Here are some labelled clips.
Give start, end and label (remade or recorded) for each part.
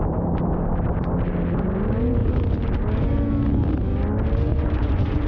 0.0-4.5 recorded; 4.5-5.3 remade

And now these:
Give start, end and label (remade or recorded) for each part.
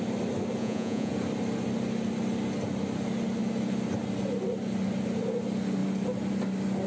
0.0-0.6 recorded; 0.6-1.1 remade; 1.1-6.9 recorded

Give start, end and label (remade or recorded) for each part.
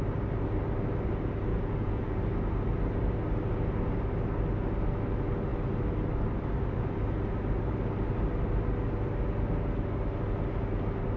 0.0-1.5 recorded; 1.5-2.2 remade; 2.2-11.2 recorded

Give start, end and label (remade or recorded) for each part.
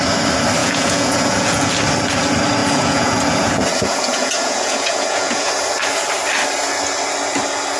0.0-0.6 recorded; 0.6-1.7 remade; 1.7-2.6 recorded; 2.6-5.5 remade; 5.5-7.8 recorded